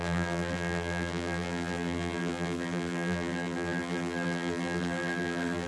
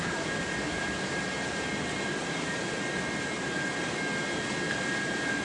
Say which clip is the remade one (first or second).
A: first